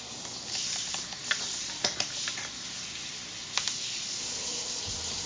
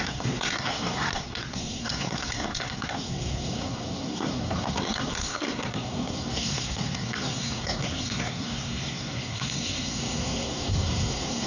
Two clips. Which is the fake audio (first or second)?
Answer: second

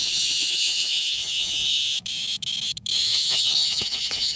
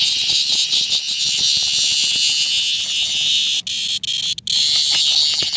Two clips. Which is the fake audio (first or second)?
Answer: first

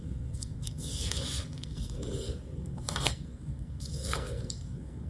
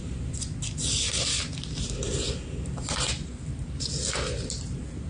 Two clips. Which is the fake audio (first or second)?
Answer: first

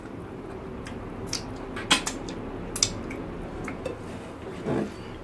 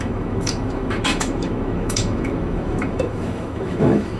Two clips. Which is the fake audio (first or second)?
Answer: second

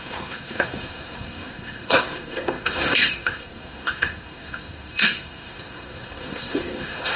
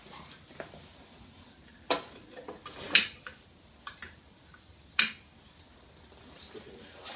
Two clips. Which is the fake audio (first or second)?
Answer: first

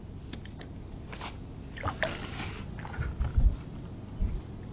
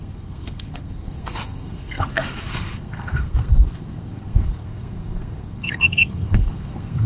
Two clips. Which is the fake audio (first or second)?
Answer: second